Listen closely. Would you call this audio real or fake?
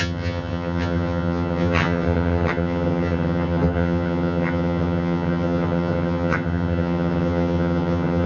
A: fake